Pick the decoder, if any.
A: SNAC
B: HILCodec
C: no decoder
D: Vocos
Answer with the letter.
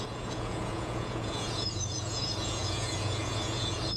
D